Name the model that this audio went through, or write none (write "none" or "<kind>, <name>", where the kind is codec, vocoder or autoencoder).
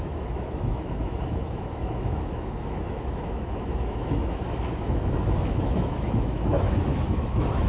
autoencoder, DAC-VAE